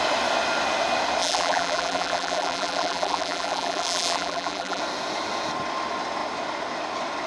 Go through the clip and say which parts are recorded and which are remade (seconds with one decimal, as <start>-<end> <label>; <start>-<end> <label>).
0.0-1.2 recorded; 1.2-4.8 remade; 4.8-7.3 recorded